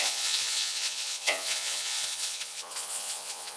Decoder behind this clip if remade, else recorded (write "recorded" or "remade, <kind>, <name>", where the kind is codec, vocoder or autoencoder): remade, vocoder, Vocos